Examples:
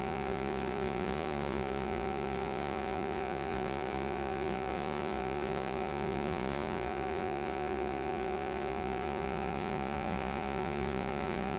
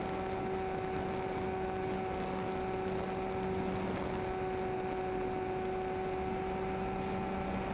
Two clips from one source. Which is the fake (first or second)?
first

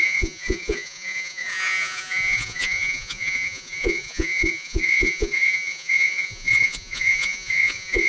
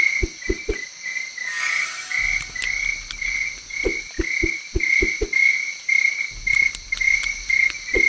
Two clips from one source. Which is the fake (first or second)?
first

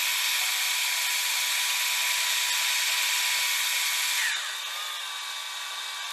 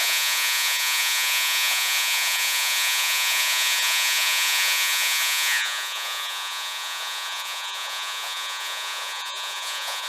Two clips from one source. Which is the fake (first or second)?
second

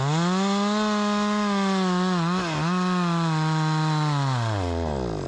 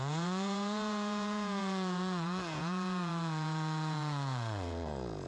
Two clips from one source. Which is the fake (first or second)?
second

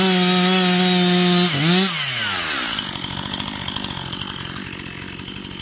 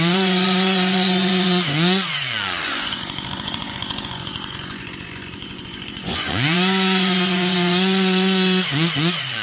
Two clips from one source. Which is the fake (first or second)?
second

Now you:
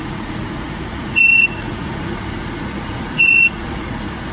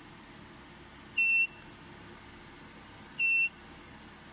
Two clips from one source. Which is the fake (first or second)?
first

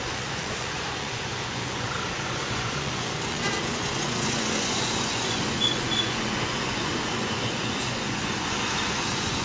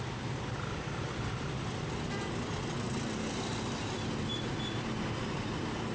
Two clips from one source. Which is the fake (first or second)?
first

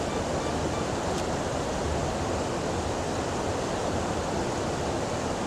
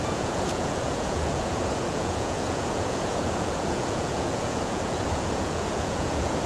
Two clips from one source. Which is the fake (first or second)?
second